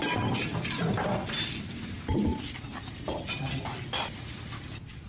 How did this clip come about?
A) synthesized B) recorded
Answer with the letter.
B